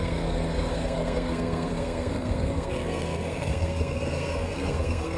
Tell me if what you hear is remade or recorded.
remade